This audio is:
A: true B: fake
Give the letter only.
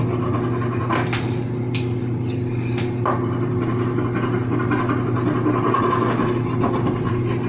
A